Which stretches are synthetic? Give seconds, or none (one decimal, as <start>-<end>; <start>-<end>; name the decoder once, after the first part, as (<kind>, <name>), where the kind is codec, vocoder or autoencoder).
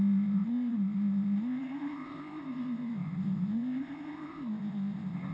0.0-5.3 (codec, ZipCodec)